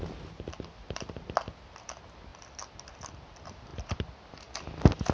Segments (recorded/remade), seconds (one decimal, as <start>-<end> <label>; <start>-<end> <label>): 0.0-3.7 recorded; 3.7-4.2 remade; 4.2-5.1 recorded